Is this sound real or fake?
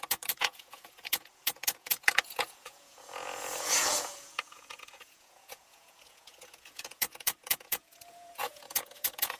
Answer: fake